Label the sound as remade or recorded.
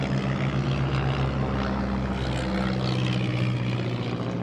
recorded